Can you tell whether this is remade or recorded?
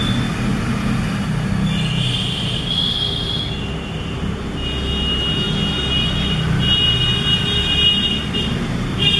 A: recorded